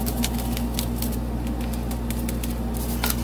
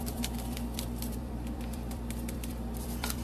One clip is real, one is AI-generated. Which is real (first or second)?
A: first